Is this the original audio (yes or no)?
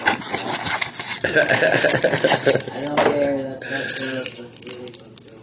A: yes